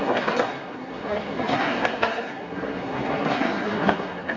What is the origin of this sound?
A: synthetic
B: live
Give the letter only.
A